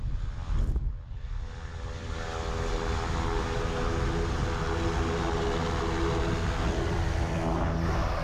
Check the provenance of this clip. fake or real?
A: real